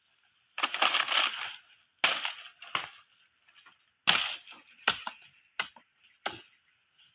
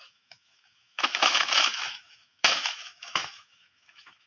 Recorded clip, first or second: first